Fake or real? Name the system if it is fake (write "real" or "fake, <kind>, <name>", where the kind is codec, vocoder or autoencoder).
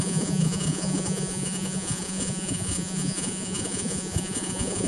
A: fake, vocoder, Vocos